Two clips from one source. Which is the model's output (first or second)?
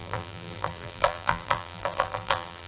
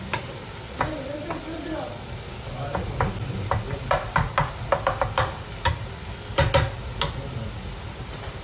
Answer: first